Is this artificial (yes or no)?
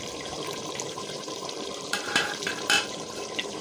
yes